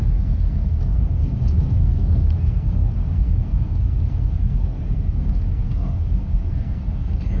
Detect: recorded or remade remade